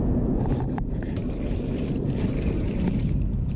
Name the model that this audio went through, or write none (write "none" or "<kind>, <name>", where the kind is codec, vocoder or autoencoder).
vocoder, BigVGAN v2